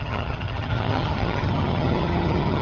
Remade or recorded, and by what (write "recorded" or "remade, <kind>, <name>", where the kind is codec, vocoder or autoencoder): remade, vocoder, HiFi-GAN